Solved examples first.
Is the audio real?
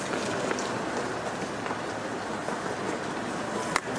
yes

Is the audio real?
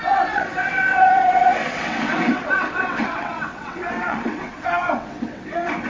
no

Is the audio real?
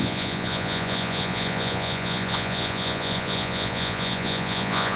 no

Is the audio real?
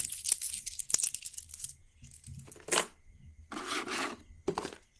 yes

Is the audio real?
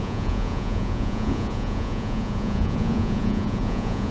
no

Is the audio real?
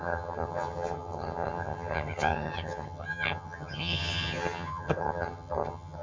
no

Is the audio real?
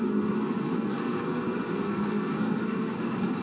no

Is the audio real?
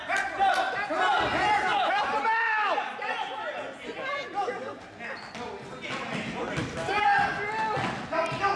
yes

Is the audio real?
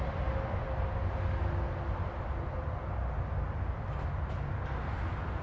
yes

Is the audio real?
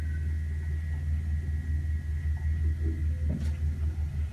yes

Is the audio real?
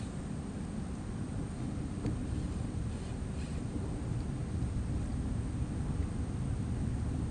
yes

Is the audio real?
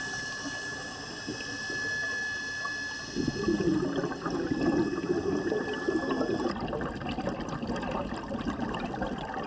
yes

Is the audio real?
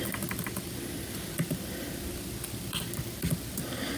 yes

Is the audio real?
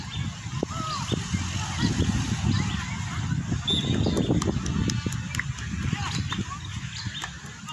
yes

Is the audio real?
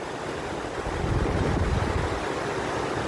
yes